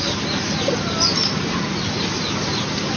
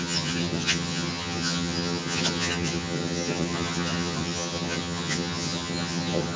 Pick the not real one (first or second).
second